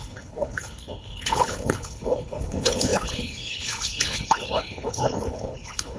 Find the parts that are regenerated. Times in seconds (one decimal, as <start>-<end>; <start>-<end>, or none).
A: 0.0-6.0